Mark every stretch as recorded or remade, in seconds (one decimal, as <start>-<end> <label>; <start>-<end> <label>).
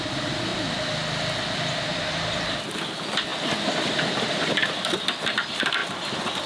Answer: 0.0-5.8 remade; 5.8-6.5 recorded